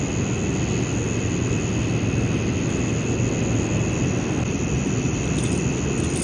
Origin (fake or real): real